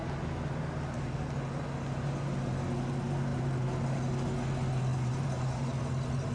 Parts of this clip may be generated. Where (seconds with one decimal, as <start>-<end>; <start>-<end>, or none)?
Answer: 3.3-4.0; 4.9-5.8